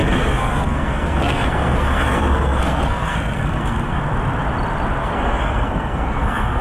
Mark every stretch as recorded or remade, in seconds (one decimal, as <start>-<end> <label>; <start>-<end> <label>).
0.0-4.0 remade; 4.0-5.0 recorded; 5.0-6.6 remade